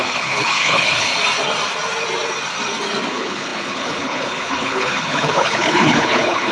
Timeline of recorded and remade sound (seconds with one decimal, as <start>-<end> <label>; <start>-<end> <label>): 0.0-1.1 remade; 1.1-3.1 recorded; 3.1-6.5 remade